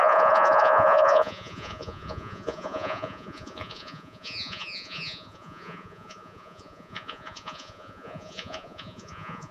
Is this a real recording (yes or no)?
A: no